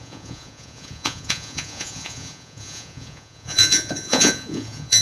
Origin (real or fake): fake